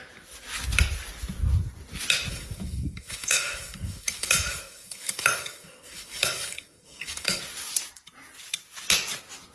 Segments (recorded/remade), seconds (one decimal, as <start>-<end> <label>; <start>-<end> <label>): 0.0-2.3 recorded; 2.3-7.4 remade; 7.4-9.5 recorded